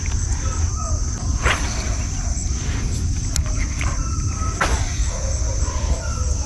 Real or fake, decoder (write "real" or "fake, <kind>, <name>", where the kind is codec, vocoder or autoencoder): real